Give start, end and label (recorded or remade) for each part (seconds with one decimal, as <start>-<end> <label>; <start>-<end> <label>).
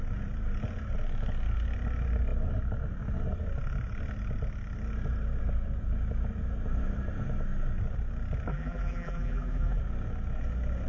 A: 0.0-8.5 recorded; 8.5-9.8 remade; 9.8-10.9 recorded